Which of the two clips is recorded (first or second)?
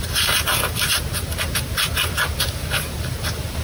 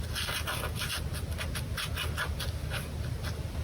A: second